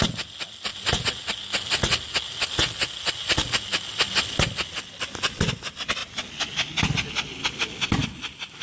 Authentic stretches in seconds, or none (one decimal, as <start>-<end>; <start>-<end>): 0.0-8.6